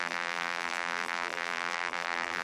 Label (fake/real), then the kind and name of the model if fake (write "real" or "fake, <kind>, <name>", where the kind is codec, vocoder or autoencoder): fake, vocoder, BigVGAN v2